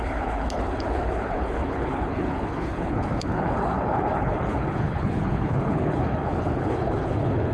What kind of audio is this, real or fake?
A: fake